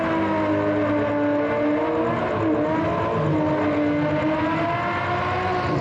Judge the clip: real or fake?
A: real